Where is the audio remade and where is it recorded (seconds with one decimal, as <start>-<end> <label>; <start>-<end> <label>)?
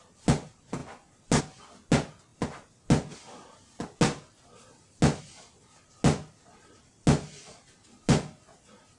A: 0.0-9.0 recorded